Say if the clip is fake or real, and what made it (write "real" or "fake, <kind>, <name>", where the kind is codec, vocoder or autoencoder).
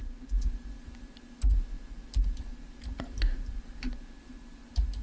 real